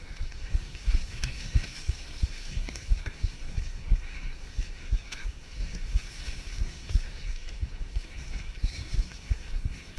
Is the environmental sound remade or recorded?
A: remade